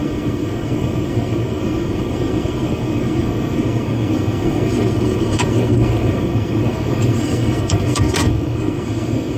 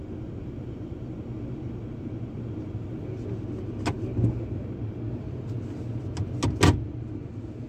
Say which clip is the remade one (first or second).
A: first